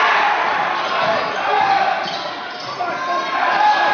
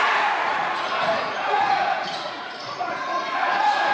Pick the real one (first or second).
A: first